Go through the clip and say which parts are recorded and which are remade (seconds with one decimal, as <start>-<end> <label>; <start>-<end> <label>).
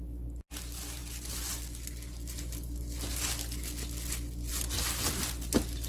0.0-5.9 recorded